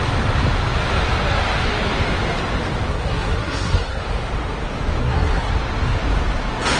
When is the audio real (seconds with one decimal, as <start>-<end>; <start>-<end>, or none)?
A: 0.0-2.9; 4.0-5.0; 5.5-6.8